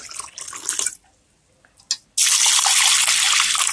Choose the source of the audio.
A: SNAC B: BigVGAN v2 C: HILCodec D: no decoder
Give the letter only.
D